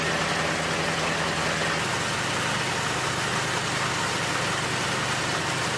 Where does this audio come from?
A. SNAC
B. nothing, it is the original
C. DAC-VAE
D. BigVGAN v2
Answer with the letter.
B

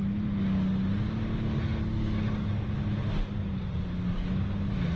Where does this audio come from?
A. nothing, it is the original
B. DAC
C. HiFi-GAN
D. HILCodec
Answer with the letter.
A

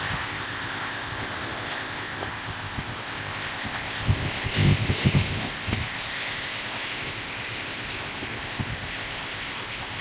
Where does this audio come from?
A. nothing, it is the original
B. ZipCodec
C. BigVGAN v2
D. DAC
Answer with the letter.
B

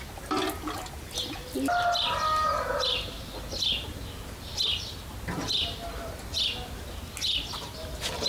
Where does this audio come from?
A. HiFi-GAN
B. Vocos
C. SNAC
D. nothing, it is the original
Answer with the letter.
D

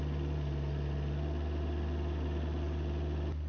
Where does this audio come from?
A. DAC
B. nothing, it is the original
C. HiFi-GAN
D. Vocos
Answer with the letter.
B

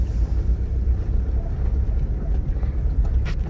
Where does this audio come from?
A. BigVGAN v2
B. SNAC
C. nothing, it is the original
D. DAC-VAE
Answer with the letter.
C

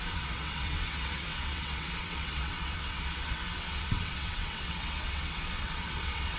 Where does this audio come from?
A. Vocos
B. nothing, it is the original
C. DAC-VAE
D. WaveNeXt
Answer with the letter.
D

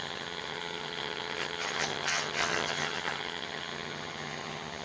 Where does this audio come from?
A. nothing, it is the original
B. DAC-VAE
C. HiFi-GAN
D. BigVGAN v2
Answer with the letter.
C